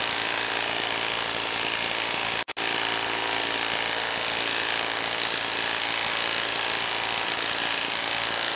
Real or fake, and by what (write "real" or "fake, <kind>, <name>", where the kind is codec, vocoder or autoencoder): real